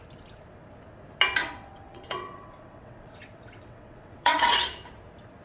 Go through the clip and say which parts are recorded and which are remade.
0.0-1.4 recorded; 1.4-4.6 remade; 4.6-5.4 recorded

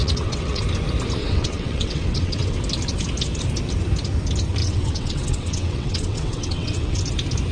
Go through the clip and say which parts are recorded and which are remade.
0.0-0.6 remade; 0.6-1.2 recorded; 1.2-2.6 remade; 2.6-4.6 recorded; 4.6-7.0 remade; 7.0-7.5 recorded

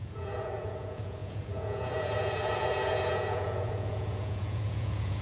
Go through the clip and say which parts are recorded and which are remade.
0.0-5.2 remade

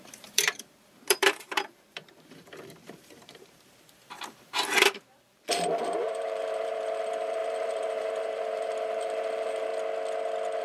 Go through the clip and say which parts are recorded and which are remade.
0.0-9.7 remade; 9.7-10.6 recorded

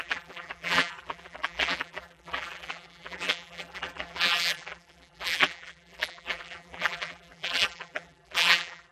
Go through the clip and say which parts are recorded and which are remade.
0.0-8.9 remade